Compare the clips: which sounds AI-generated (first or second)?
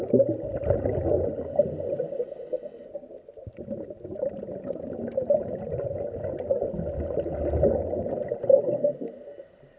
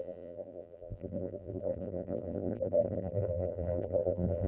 second